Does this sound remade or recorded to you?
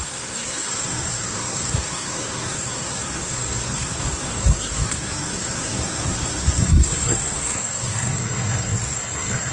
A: remade